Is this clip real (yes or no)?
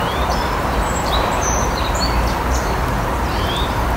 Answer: no